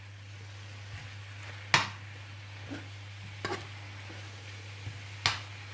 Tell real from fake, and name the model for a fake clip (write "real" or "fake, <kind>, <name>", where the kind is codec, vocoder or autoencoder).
real